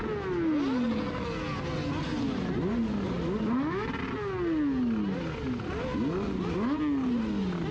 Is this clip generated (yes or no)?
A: no